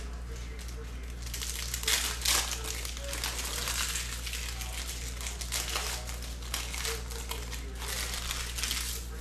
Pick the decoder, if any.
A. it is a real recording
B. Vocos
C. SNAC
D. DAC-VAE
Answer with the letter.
A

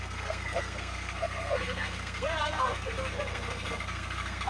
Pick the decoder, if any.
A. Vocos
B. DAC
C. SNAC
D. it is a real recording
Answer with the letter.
C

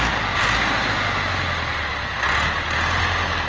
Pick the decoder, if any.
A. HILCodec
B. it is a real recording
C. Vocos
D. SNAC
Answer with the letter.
B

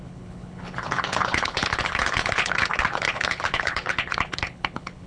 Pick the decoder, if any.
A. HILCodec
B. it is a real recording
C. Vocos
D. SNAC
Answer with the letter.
A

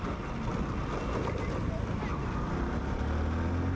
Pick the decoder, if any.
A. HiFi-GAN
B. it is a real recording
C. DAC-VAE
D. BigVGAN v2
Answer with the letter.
B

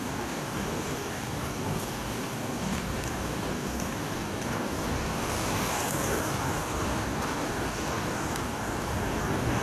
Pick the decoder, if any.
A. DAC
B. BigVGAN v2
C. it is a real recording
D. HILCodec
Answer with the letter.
A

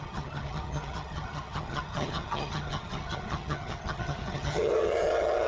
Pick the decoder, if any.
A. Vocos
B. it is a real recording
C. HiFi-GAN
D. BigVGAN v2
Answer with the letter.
C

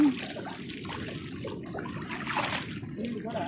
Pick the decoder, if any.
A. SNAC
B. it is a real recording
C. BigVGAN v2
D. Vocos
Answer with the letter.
B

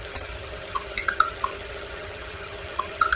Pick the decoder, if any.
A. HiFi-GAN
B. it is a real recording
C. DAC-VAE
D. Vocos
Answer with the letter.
A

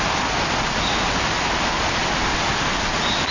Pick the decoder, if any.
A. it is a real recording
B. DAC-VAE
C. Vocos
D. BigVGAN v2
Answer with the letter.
A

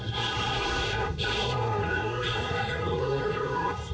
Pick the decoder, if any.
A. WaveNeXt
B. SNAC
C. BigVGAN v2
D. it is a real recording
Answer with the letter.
B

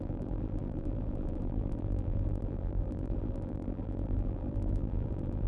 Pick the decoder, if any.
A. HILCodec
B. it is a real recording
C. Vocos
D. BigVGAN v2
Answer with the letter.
D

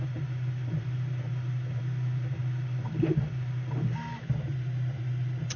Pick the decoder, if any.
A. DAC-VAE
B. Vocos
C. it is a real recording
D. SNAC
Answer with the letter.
C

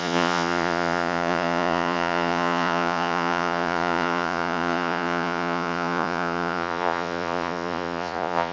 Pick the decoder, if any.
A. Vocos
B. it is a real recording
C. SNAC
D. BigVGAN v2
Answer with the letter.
A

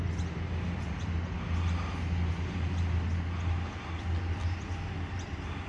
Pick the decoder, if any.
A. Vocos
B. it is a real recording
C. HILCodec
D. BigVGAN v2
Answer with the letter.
B